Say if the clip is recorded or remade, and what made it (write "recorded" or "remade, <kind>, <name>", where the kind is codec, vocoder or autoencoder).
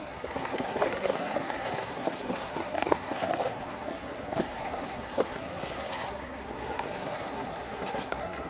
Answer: remade, codec, SNAC